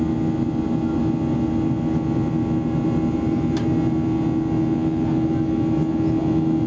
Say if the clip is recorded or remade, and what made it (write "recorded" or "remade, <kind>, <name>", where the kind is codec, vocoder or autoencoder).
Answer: recorded